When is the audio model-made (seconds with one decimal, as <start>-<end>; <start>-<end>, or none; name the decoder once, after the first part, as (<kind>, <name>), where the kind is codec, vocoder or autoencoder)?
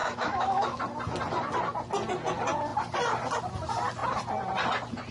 0.0-0.8 (autoencoder, DAC-VAE)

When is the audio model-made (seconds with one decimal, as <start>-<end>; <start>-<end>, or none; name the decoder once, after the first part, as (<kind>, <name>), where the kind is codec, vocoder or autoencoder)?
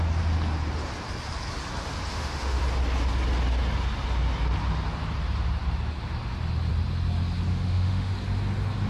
2.1-2.6 (autoencoder, DAC-VAE); 7.5-8.1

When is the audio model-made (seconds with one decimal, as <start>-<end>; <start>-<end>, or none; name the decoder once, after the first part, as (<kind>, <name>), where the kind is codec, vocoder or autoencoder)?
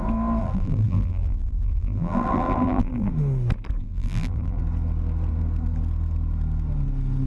0.4-3.1 (vocoder, BigVGAN v2); 3.8-4.6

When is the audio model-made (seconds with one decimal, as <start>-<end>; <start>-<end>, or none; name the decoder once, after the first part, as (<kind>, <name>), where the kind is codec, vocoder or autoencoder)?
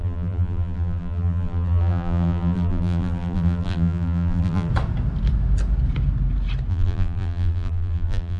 0.0-4.7 (vocoder, BigVGAN v2); 6.7-8.4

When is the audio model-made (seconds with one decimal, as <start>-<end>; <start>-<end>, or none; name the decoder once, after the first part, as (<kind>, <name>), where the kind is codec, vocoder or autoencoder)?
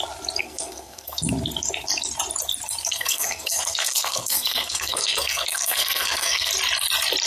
0.4-1.3 (codec, SNAC); 2.8-6.5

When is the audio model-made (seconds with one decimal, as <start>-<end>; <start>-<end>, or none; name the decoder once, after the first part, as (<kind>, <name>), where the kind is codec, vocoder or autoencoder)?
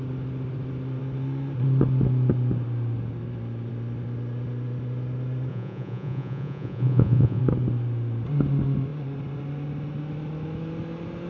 5.5-7.4 (vocoder, Vocos)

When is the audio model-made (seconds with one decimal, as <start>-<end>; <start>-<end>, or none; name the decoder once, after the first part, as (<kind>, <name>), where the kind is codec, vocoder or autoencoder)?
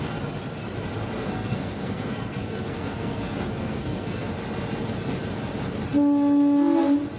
1.2-4.3 (codec, SNAC)